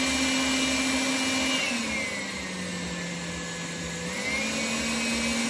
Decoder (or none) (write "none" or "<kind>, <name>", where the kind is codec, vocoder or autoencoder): none